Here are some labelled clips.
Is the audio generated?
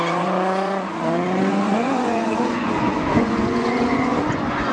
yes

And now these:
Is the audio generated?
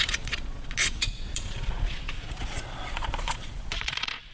yes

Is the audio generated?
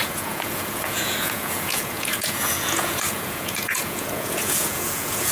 yes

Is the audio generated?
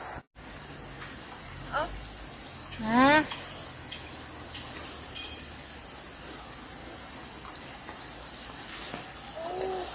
no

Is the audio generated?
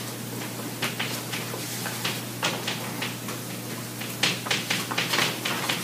no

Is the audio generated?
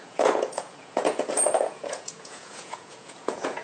yes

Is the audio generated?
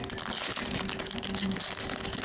no